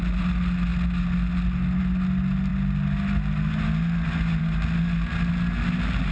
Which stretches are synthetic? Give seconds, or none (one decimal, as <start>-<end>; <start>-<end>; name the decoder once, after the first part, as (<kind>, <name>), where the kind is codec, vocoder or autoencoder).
none